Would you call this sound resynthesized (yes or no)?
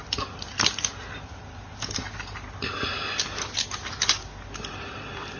no